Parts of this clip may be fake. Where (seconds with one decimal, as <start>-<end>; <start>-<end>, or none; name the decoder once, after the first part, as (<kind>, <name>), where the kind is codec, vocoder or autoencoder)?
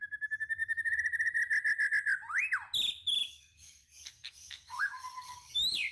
3.3-5.5 (codec, SNAC)